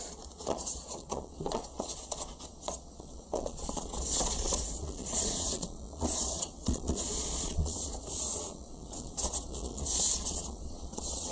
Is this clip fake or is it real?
fake